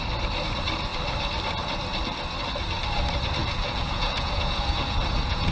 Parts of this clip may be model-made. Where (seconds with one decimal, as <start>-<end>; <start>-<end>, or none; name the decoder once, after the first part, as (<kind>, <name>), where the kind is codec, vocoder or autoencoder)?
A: 3.4-5.5 (vocoder, Vocos)